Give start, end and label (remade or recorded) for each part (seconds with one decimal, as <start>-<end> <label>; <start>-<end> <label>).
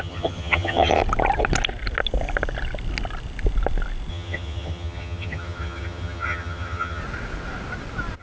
0.0-1.0 remade; 1.0-4.1 recorded; 4.1-7.0 remade; 7.0-8.2 recorded